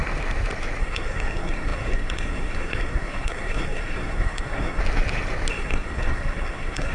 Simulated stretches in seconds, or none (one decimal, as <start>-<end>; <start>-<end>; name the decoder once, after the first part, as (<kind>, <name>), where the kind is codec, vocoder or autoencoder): 0.8-4.8 (codec, SNAC); 5.5-6.9